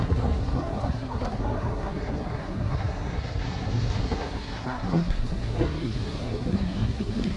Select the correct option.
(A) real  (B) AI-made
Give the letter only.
B